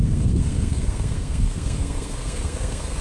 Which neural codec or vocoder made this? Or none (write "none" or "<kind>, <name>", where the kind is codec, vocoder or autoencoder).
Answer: codec, SNAC